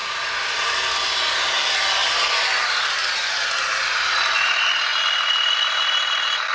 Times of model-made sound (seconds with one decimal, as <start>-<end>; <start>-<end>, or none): 0.0-0.8; 2.0-3.6

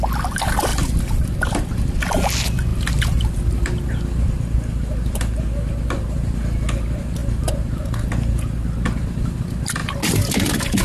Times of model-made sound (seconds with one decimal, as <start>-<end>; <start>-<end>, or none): 0.7-1.9; 2.7-5.4

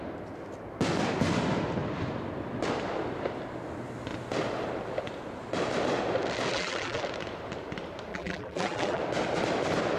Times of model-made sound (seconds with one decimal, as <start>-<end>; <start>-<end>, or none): 6.5-7.0; 8.1-9.0

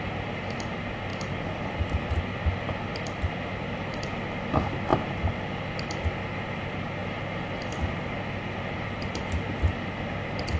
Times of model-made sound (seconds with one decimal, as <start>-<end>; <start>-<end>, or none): 1.1-2.1

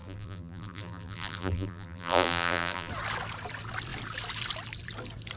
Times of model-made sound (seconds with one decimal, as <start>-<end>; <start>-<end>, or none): 0.0-2.9